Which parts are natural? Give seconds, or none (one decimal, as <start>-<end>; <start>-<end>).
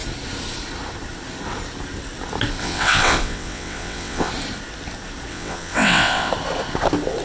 0.0-2.6; 4.3-5.3; 6.3-7.2